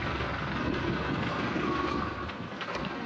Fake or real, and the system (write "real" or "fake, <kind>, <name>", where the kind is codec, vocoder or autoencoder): fake, codec, SNAC